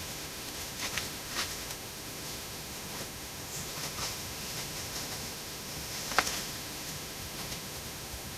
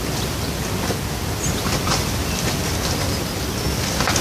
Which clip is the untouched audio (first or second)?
second